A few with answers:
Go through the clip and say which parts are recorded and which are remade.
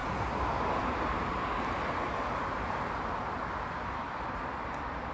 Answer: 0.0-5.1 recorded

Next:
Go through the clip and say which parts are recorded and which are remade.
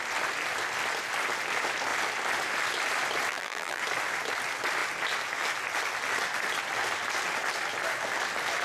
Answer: 0.0-3.3 recorded; 3.3-3.8 remade; 3.8-8.6 recorded